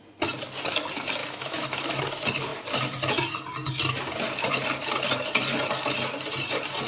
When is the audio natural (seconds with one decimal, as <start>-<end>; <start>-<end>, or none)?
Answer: 0.0-1.2; 2.0-6.9